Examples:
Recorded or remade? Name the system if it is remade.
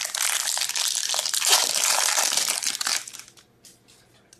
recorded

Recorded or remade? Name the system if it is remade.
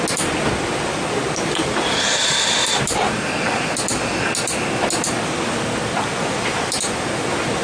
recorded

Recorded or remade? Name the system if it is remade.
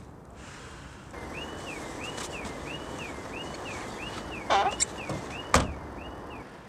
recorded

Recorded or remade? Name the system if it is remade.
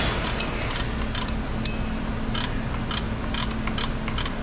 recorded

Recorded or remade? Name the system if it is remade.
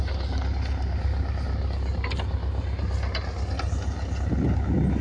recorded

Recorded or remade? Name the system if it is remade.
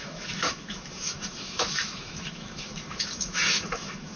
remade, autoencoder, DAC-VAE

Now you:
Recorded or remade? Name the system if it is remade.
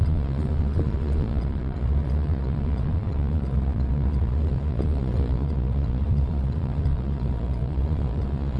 remade, vocoder, Vocos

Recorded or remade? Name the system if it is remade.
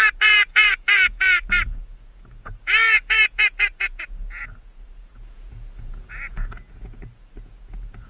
remade, vocoder, Vocos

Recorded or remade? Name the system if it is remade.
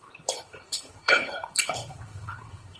remade, codec, HILCodec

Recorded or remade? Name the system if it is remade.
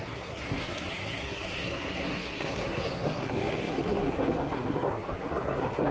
remade, codec, SNAC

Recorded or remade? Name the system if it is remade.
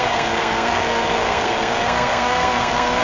remade, codec, SNAC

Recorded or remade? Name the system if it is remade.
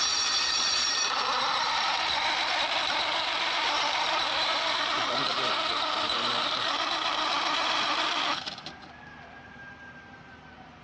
remade, vocoder, BigVGAN v2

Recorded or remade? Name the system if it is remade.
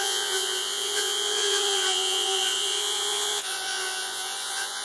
remade, vocoder, Vocos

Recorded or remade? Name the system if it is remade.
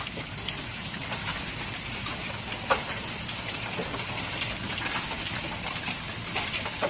recorded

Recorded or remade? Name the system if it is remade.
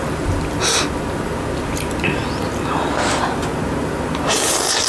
recorded